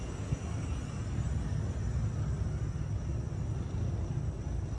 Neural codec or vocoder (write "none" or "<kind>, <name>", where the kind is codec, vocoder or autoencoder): none